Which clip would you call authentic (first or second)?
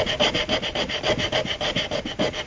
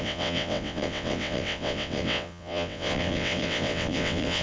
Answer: first